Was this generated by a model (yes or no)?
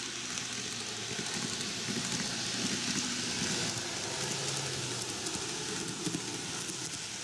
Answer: no